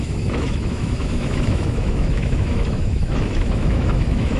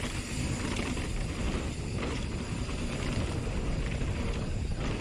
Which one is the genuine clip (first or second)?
second